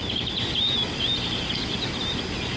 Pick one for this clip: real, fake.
real